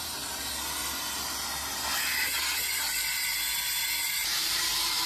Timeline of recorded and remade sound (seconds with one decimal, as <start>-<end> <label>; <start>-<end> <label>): 0.0-4.2 recorded; 4.2-5.1 remade

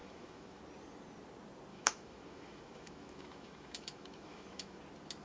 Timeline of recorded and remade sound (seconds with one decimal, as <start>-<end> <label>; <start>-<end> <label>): 0.0-0.6 remade; 0.6-1.7 recorded; 1.7-4.8 remade; 4.8-5.2 recorded

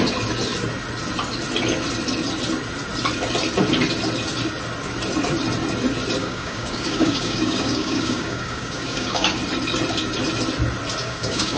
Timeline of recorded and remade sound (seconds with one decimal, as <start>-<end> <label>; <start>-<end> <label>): 0.0-6.2 recorded; 6.2-9.4 remade; 9.4-11.0 recorded; 11.0-11.6 remade

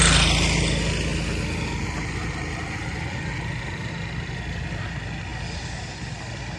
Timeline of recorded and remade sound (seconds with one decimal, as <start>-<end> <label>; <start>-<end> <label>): 0.0-6.6 recorded